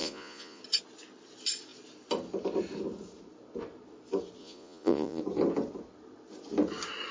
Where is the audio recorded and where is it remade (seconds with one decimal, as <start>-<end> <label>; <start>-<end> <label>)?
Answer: 0.0-0.6 remade; 0.6-4.4 recorded; 4.4-5.2 remade; 5.2-7.1 recorded